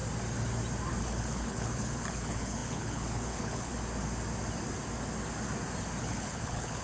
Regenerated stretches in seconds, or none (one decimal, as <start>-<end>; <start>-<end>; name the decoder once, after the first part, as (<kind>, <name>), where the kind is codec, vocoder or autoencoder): 1.0-3.7 (codec, HILCodec); 6.0-6.8